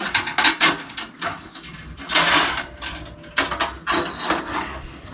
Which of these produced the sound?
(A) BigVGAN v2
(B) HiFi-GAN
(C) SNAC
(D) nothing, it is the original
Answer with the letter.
D